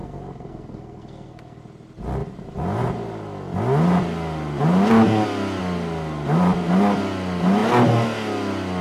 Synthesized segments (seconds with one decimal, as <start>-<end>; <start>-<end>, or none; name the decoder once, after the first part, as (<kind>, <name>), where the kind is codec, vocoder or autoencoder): 0.0-1.6 (codec, SNAC)